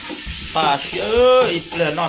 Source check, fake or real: real